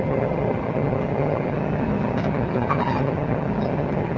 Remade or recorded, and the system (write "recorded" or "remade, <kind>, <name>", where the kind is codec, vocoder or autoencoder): remade, vocoder, HiFi-GAN